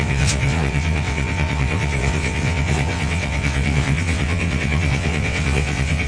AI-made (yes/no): yes